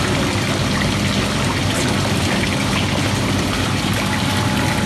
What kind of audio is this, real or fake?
real